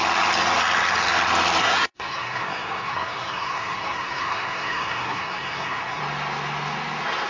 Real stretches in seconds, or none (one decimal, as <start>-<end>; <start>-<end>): 0.0-1.6; 6.0-7.3